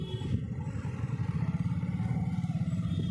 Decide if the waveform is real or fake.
real